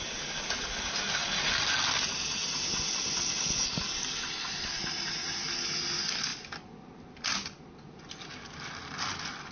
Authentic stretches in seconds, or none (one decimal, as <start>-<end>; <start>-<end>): 0.0-9.5